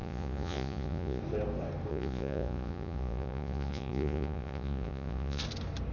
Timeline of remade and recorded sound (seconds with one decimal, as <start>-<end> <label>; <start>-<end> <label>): 0.0-1.2 remade; 1.2-1.9 recorded; 1.9-5.4 remade; 5.4-5.9 recorded